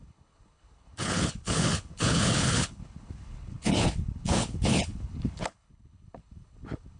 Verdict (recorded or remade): remade